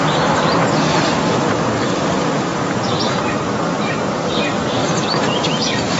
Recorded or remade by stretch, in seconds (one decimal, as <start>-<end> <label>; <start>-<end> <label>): 0.0-2.5 recorded; 2.5-3.2 remade; 3.2-6.0 recorded